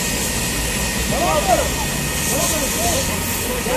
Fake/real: real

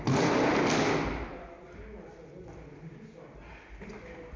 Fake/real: real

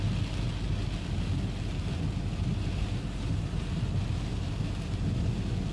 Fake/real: real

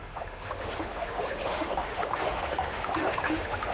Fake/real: fake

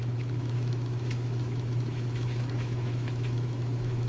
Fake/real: fake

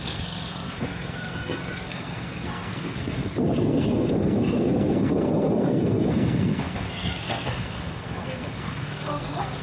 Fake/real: fake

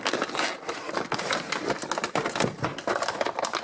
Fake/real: real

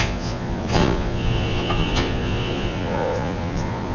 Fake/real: fake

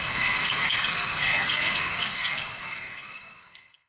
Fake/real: fake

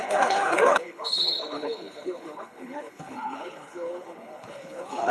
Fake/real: fake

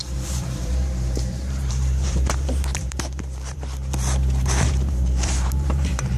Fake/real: fake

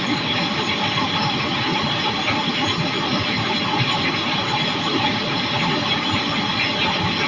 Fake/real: real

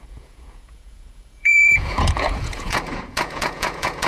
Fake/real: fake